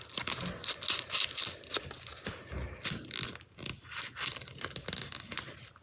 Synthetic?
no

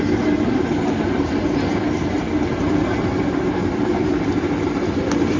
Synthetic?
yes